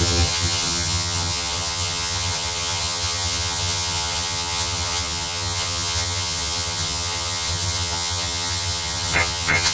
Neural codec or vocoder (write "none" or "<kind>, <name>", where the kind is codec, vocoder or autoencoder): vocoder, HiFi-GAN